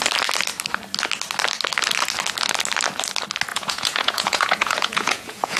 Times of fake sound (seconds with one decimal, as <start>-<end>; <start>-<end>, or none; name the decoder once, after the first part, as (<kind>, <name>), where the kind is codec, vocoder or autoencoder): 3.5-5.6 (vocoder, Vocos)